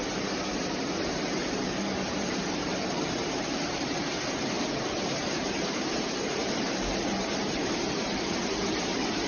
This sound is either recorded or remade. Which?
remade